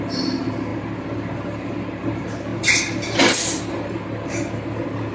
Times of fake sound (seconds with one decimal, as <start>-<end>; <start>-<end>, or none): none